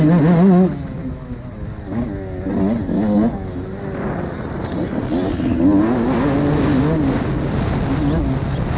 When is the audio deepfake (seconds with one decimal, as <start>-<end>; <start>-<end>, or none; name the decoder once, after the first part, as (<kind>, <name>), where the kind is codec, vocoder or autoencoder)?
1.0-1.5 (autoencoder, DAC-VAE)